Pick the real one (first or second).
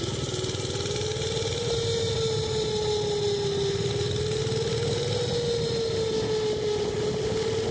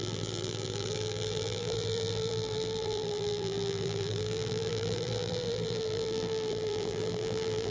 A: first